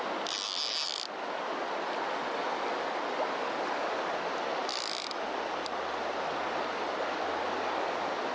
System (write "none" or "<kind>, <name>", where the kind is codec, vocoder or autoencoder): none